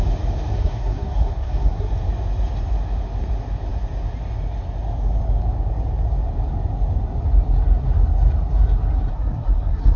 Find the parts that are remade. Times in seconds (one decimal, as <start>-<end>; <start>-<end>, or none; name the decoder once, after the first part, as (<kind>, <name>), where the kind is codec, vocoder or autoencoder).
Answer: 0.5-1.9 (codec, SNAC); 9.1-10.0